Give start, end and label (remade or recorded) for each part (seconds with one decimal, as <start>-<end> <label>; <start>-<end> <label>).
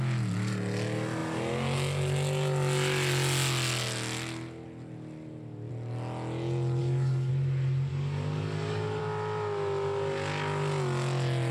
0.0-6.8 recorded; 6.8-7.3 remade; 7.3-7.9 recorded; 7.9-9.0 remade; 9.0-11.5 recorded